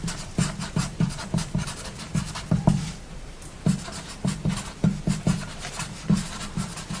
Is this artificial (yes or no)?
yes